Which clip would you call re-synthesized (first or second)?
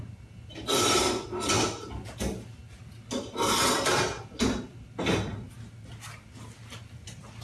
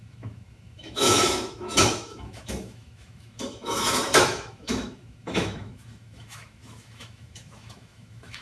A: second